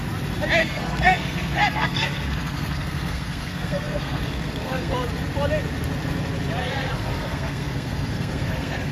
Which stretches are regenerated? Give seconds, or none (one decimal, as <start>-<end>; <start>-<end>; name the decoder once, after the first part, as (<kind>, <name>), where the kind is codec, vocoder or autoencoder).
0.6-5.1 (codec, SNAC); 6.6-8.9